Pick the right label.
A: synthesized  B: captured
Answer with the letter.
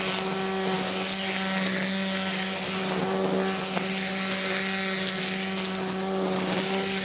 B